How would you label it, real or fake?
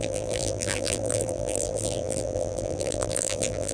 fake